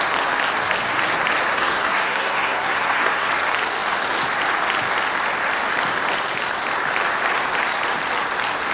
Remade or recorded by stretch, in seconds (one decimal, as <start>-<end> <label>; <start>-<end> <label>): 0.0-1.5 recorded; 1.5-3.3 remade; 3.3-8.7 recorded